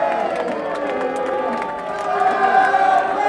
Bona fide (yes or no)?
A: yes